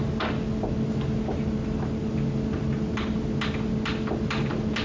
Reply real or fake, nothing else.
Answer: real